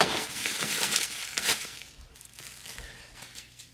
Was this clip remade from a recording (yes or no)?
yes